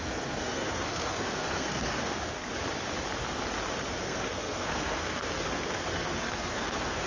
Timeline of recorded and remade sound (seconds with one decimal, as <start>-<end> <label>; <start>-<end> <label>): 0.0-2.5 remade; 2.5-4.0 recorded; 4.0-7.1 remade